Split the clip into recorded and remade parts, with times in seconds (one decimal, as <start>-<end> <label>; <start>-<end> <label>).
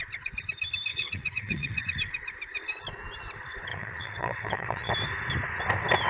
0.0-0.9 recorded; 0.9-1.8 remade; 1.8-3.7 recorded; 3.7-4.9 remade; 4.9-6.1 recorded